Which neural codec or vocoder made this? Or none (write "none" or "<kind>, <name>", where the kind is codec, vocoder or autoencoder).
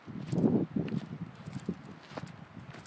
none